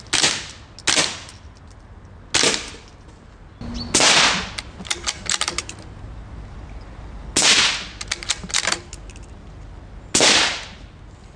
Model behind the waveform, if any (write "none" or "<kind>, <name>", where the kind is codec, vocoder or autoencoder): none